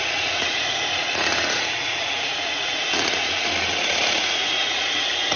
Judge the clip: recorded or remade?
remade